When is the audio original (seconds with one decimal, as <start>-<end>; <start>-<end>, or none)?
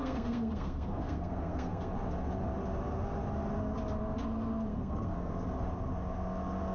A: 1.9-4.7; 5.3-6.7